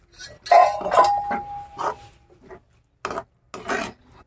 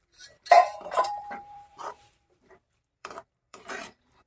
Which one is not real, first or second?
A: second